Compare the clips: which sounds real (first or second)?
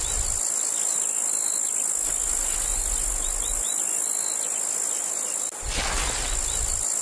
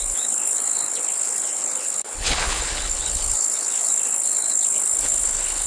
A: first